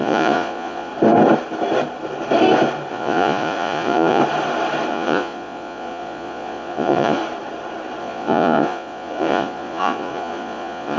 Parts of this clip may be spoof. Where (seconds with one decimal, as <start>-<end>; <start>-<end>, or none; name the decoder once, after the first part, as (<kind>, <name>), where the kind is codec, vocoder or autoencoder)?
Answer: 0.0-0.9 (vocoder, Vocos); 2.9-4.2; 4.9-7.2; 8.0-11.0